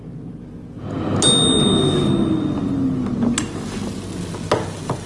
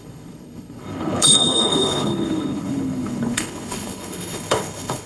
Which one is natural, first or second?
first